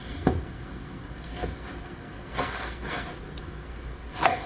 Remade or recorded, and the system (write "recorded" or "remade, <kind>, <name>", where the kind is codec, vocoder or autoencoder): remade, codec, SNAC